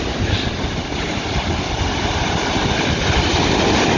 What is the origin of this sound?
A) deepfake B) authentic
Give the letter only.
B